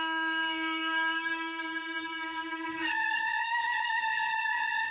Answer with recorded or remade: remade